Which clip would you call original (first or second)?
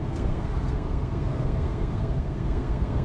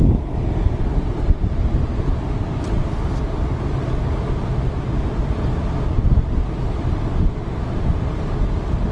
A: second